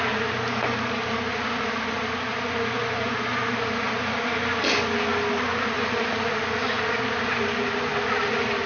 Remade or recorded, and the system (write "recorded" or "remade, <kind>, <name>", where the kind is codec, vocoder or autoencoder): recorded